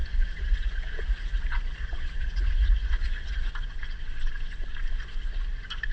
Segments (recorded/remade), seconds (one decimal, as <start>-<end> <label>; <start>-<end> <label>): 0.0-3.5 remade; 3.5-5.9 recorded